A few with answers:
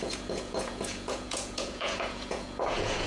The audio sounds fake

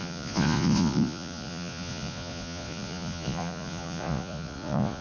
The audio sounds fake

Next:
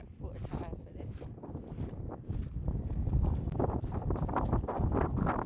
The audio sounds real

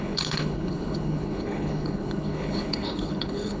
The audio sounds fake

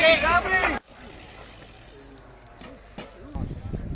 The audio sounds real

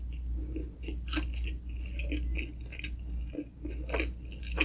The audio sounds real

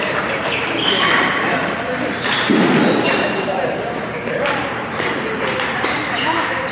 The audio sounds fake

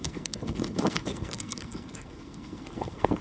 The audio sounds fake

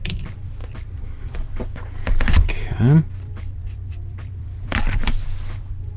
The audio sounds fake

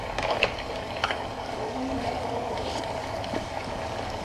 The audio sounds fake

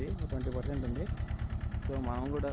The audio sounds real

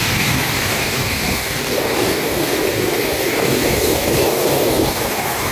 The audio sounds fake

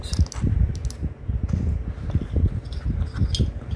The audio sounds real